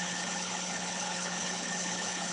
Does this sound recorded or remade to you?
remade